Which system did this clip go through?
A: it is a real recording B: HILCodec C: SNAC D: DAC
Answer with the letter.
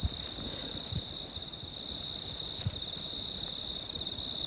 A